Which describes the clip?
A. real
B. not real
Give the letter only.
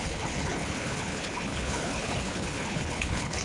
B